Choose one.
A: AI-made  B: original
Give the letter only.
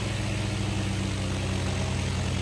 B